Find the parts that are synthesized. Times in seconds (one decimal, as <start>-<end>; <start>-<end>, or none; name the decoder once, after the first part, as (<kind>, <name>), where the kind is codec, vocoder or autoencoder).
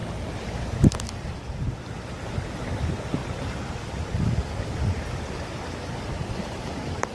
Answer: 2.3-3.2 (vocoder, BigVGAN v2); 5.8-7.1